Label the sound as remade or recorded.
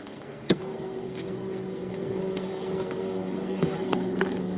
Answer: remade